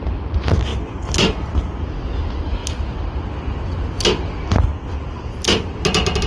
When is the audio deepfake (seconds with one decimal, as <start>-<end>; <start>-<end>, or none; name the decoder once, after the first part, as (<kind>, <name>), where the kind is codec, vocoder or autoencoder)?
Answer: none